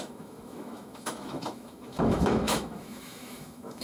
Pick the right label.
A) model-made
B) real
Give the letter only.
A